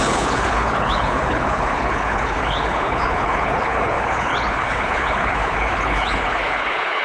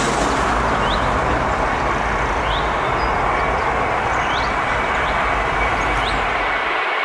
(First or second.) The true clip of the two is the second